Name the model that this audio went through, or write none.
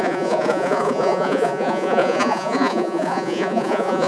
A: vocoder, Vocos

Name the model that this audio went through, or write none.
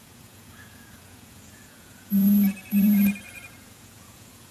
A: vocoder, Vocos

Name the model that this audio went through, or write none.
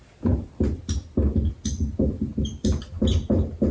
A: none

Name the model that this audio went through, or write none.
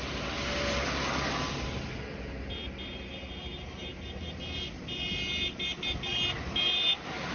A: none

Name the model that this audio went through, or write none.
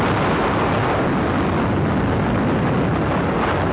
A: none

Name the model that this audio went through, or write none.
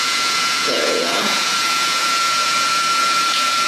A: vocoder, Vocos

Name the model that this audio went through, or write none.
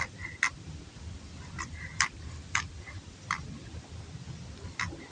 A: none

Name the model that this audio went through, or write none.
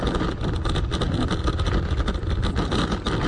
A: none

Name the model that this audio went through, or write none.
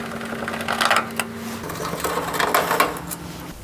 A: none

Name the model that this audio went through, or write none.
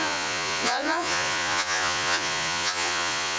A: vocoder, Vocos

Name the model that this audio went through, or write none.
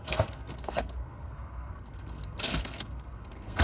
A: codec, SNAC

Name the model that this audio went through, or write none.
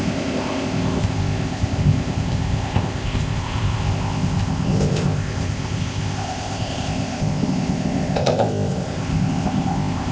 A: codec, ZipCodec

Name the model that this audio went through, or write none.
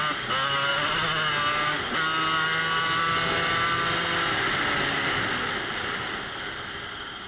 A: none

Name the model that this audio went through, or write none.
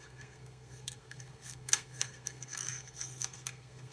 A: codec, SNAC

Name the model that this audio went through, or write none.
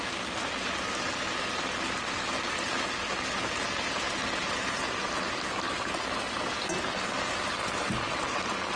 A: none